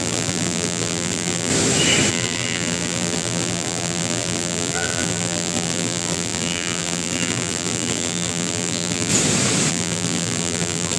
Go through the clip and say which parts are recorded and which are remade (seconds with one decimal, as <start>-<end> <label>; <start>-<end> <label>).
0.0-1.5 remade; 1.5-2.1 recorded; 2.1-9.1 remade; 9.1-9.7 recorded; 9.7-11.0 remade